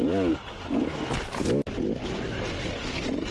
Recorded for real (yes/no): yes